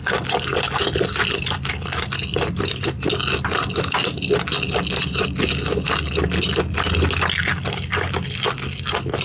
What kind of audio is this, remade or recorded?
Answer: recorded